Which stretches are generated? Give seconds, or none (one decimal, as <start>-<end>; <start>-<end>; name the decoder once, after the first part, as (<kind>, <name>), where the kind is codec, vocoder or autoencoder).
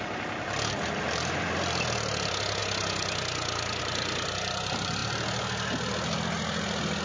0.0-2.6 (vocoder, BigVGAN v2); 3.8-5.0